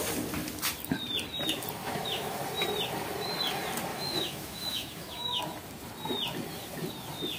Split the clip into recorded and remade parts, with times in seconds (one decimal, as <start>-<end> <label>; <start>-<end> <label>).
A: 0.0-1.8 recorded; 1.8-2.4 remade; 2.4-3.9 recorded; 3.9-5.4 remade; 5.4-7.4 recorded